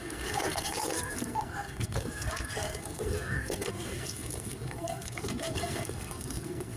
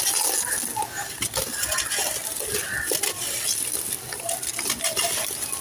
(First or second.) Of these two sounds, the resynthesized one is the first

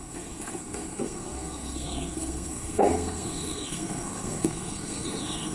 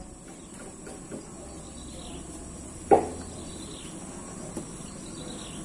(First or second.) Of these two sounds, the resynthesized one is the first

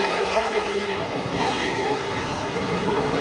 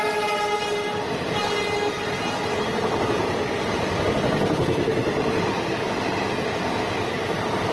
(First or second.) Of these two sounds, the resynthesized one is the first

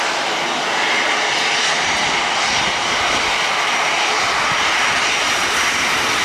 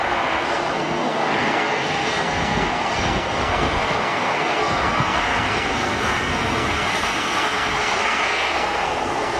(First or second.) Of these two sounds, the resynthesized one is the second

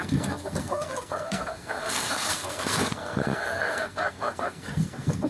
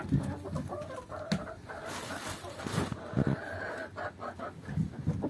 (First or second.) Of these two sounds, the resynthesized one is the first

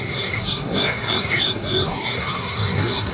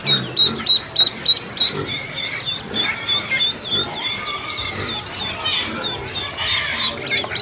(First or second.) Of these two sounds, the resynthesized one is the first